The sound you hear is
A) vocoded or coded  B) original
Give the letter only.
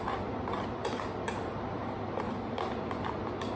B